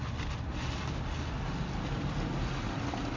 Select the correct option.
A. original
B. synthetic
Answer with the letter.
A